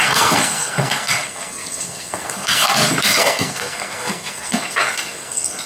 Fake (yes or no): yes